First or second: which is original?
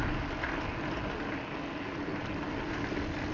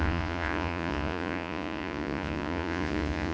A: first